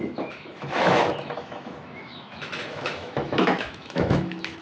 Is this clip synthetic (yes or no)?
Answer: yes